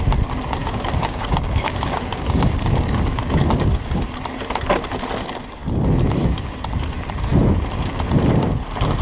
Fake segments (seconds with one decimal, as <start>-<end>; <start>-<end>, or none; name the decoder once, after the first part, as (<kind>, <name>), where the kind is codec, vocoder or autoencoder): 0.6-3.2 (codec, DAC)